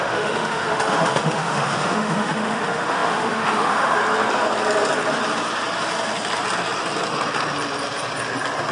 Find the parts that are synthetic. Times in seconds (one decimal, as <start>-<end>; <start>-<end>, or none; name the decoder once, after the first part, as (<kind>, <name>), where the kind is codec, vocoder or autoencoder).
0.0-4.0 (autoencoder, DAC-VAE)